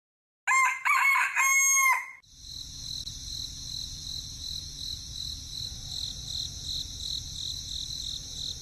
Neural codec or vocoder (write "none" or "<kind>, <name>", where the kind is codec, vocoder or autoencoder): none